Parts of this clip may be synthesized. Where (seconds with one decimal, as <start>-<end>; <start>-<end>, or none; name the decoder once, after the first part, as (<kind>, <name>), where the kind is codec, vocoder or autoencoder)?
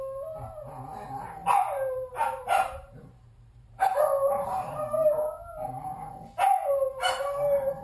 0.0-5.4 (vocoder, BigVGAN v2); 6.7-7.8